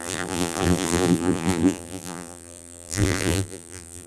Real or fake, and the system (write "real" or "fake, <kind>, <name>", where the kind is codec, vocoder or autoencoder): fake, vocoder, BigVGAN v2